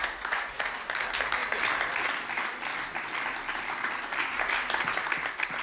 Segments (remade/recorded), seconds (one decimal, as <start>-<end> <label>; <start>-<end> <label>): 0.0-0.6 remade; 0.6-5.6 recorded